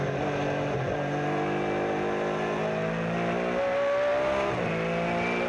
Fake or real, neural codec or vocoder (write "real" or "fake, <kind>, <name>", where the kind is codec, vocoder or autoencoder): real